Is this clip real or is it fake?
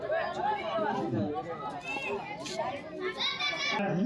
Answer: real